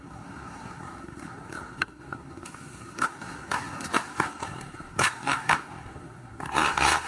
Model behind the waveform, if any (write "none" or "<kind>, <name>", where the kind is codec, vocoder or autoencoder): codec, SNAC